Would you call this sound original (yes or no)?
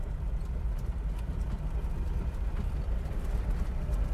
yes